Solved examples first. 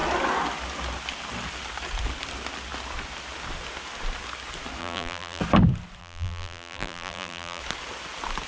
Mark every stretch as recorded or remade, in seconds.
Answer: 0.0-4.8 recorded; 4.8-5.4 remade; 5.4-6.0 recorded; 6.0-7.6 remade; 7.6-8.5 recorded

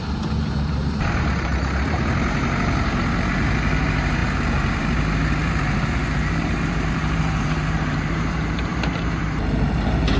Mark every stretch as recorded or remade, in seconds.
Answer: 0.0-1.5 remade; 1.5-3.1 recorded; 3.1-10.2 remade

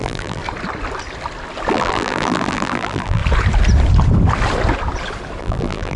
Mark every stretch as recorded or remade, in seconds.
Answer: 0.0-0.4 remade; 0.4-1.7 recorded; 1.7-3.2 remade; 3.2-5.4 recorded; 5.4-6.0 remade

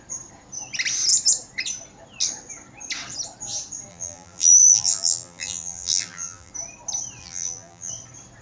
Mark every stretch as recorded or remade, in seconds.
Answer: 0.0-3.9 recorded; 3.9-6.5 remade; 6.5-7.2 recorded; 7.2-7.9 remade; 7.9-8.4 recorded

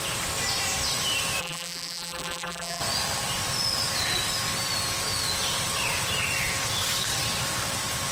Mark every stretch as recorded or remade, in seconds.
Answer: 0.0-1.4 recorded; 1.4-2.8 remade; 2.8-8.1 recorded

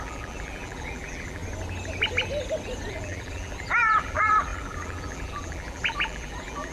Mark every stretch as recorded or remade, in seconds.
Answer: 0.0-1.4 remade; 1.4-2.9 recorded; 2.9-6.7 remade

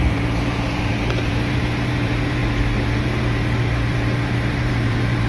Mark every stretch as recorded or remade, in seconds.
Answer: 0.0-2.4 remade; 2.4-3.0 recorded; 3.0-5.3 remade